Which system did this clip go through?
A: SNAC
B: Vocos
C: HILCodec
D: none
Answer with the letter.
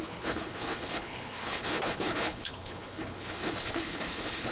C